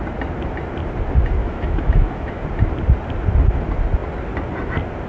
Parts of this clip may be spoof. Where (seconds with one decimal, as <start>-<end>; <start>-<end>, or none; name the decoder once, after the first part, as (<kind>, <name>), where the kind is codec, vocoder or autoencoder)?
1.4-2.4 (autoencoder, DAC-VAE)

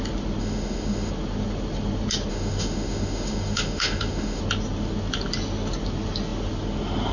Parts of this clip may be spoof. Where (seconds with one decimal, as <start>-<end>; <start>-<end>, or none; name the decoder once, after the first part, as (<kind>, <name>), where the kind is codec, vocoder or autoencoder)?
0.4-1.1 (autoencoder, DAC-VAE); 2.3-4.4

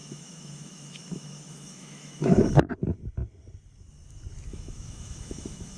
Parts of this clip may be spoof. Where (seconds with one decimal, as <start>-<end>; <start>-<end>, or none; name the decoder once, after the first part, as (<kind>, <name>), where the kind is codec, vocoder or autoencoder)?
0.0-2.7 (autoencoder, DAC-VAE); 4.5-5.8

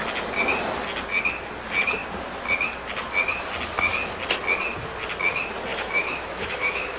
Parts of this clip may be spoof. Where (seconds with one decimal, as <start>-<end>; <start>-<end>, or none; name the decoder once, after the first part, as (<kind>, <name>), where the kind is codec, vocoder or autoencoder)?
5.7-7.0 (autoencoder, DAC-VAE)